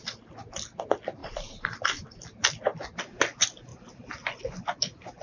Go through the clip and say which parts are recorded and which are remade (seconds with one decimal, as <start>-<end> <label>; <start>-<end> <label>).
0.0-1.2 recorded; 1.2-2.2 remade; 2.2-3.7 recorded; 3.7-4.4 remade; 4.4-5.2 recorded